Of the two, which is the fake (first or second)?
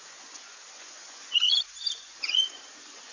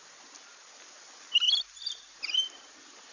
first